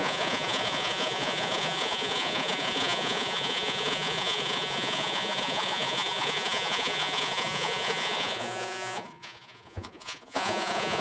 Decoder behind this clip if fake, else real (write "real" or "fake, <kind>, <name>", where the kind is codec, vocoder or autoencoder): fake, vocoder, Vocos